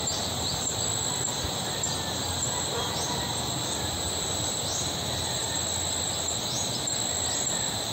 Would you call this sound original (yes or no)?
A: yes